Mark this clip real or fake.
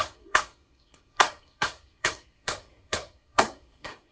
fake